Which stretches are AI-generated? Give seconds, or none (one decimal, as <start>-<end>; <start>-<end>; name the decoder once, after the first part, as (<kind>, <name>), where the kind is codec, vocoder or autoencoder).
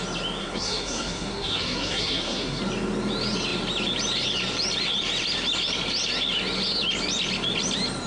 0.4-2.6 (codec, SNAC)